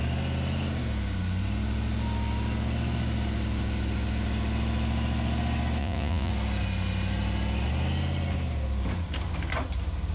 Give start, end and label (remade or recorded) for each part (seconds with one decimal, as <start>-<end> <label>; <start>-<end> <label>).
0.0-5.8 recorded; 5.8-6.3 remade; 6.3-10.1 recorded